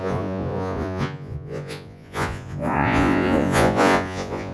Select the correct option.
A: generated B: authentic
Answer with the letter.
A